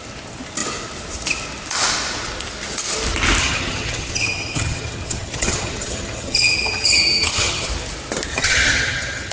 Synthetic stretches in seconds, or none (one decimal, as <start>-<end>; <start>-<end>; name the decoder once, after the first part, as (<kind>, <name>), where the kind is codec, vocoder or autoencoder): 3.4-7.7 (vocoder, HiFi-GAN); 8.3-9.3